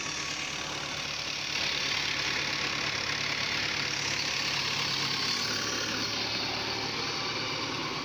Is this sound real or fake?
real